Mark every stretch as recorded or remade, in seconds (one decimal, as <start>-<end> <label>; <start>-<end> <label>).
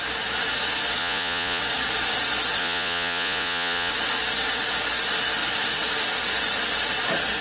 0.0-1.0 recorded; 1.0-1.6 remade; 1.6-2.6 recorded; 2.6-3.9 remade; 3.9-7.4 recorded